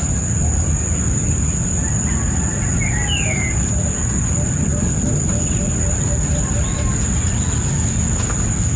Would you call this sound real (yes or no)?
yes